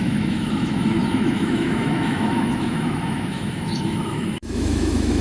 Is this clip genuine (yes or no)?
no